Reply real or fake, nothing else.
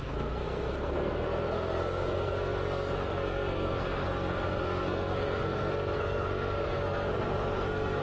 fake